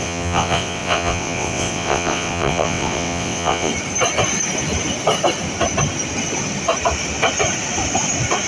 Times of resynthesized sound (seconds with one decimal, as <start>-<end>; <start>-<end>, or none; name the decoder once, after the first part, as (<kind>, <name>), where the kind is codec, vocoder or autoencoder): 0.0-3.7 (vocoder, WaveNeXt)